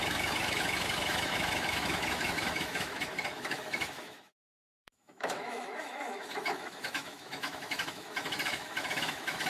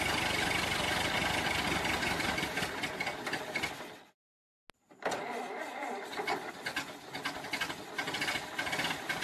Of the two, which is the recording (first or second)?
second